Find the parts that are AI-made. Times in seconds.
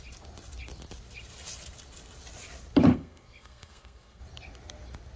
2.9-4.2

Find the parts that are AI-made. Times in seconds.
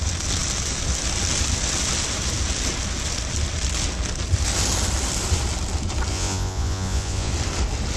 6.1-7.3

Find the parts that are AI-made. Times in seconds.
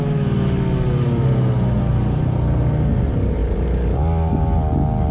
none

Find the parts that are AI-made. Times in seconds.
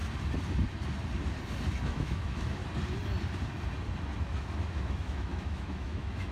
1.8-2.6; 4.2-6.3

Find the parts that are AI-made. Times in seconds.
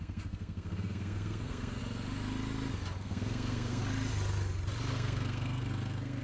0.0-1.8; 3.0-3.8; 4.9-6.2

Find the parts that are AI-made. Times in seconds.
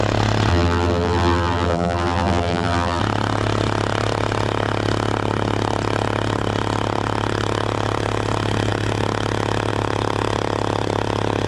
0.5-3.0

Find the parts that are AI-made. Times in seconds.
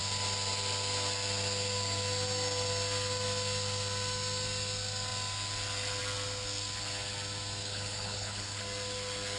7.6-8.6